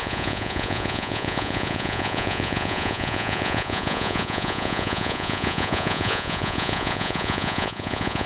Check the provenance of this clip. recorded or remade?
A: remade